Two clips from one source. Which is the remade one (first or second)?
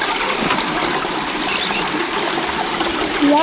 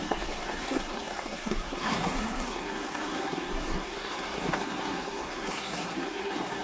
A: second